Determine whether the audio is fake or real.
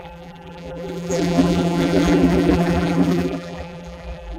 fake